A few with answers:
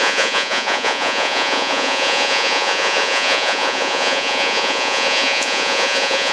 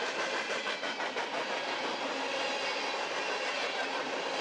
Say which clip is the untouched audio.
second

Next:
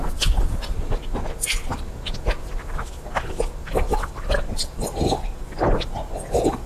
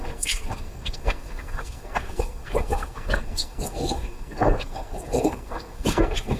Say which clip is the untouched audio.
first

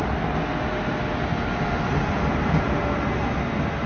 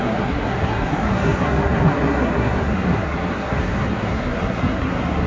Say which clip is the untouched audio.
first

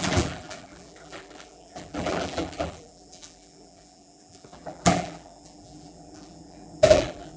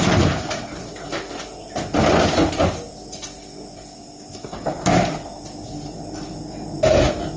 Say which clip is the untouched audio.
second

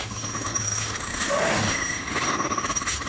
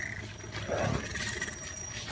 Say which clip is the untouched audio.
second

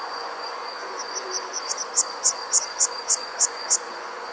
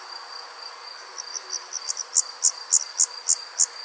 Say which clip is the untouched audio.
second